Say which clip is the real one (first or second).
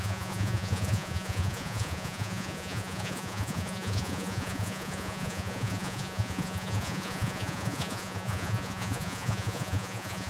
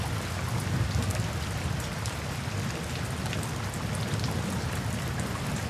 second